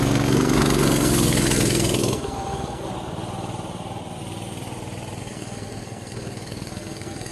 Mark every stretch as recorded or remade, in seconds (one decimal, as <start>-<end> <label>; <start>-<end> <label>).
0.0-2.9 remade; 2.9-5.2 recorded; 5.2-7.3 remade